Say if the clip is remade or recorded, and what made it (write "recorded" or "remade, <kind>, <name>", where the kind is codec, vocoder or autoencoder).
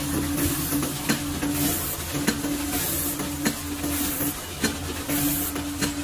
recorded